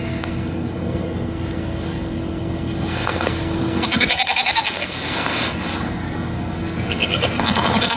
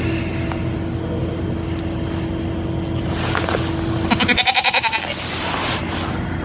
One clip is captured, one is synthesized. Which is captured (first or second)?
second